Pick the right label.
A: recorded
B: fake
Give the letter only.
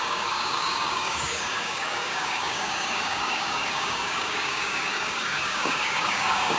B